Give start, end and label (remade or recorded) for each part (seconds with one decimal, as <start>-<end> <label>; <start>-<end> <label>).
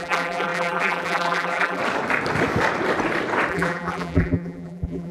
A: 0.0-1.8 remade; 1.8-3.5 recorded; 3.5-5.1 remade